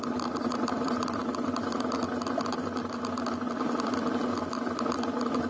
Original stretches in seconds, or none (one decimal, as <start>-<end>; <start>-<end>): 0.0-5.5